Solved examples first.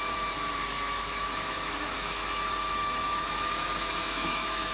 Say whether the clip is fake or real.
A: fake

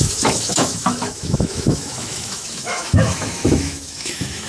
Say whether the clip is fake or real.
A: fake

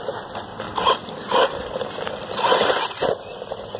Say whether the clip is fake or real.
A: real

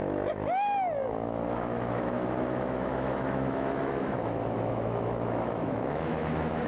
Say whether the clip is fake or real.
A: fake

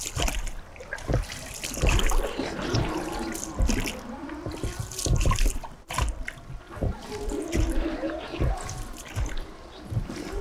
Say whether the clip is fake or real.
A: real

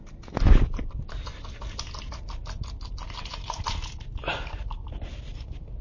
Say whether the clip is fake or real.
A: real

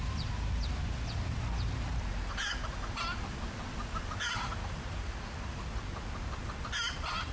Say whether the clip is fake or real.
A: real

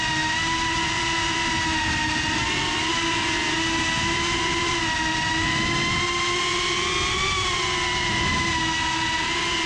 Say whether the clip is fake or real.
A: real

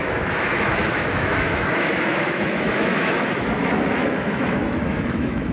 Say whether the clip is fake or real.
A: fake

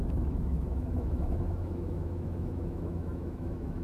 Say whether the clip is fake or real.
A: fake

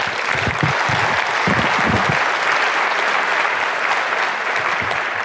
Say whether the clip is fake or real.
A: real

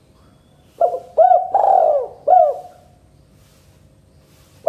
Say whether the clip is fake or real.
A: real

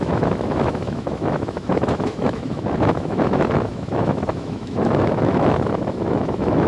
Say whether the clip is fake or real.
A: fake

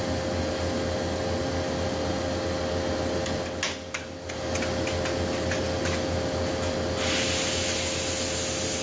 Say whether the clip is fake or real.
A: real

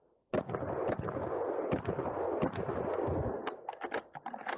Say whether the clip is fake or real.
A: real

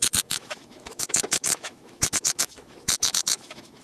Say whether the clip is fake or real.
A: fake